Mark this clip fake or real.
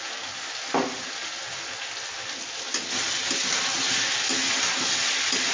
real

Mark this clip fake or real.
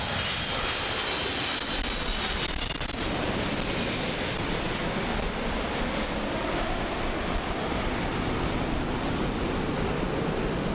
real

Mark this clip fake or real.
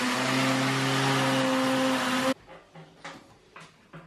real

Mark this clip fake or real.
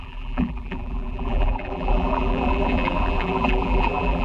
fake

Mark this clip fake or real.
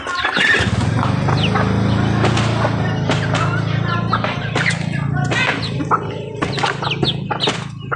real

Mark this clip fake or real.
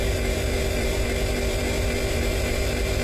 fake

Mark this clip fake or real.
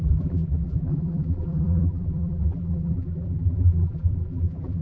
fake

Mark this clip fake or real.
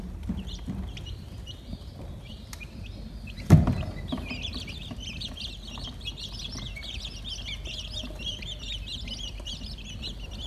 fake